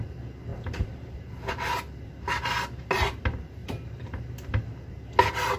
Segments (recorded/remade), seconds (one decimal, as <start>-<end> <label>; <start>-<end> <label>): 0.0-0.5 recorded; 0.5-1.9 remade; 1.9-3.6 recorded; 3.6-4.2 remade; 4.2-5.6 recorded